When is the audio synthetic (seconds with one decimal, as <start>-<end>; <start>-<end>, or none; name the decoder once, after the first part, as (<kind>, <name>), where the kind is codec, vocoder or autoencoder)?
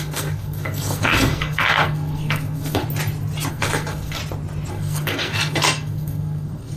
0.0-2.8 (codec, SNAC); 3.5-4.2; 4.7-6.8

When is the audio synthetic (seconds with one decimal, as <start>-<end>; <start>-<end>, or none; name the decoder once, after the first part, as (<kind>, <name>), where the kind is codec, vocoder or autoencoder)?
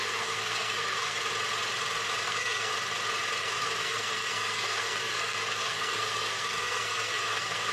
0.0-1.2 (codec, SNAC); 2.2-2.7; 3.4-7.7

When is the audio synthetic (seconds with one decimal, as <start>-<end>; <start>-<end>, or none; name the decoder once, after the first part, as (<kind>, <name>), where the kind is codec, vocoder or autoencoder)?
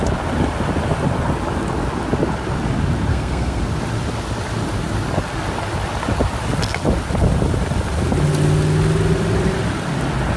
3.1-3.6 (codec, SNAC)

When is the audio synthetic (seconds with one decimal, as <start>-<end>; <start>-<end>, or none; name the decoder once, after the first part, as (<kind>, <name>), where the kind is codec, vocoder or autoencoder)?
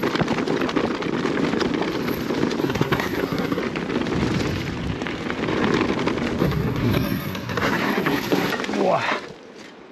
2.6-3.6 (codec, SNAC); 6.4-8.5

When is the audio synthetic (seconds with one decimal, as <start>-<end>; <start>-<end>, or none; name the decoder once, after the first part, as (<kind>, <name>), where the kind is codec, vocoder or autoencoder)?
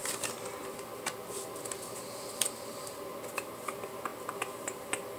none